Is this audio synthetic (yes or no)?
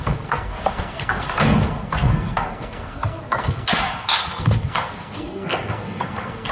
yes